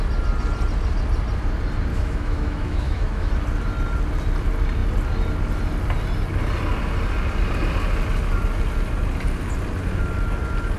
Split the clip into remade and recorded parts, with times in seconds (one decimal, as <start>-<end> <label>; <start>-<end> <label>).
0.0-1.9 recorded; 1.9-3.3 remade; 3.3-10.8 recorded